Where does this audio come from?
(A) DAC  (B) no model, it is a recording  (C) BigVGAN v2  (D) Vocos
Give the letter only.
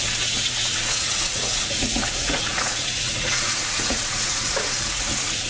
D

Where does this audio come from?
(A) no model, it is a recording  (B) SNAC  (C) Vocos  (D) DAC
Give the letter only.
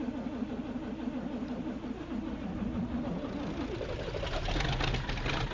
A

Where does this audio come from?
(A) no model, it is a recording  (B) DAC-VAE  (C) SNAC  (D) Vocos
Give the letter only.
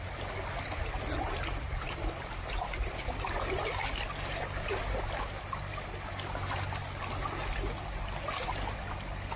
A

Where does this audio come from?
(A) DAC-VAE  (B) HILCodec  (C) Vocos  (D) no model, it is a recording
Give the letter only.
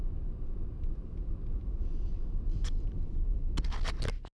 D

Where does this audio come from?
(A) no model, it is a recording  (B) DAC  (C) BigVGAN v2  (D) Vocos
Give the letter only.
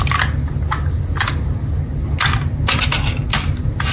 A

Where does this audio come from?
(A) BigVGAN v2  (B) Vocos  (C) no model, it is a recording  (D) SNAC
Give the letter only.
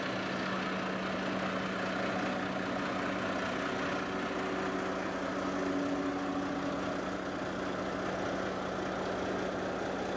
C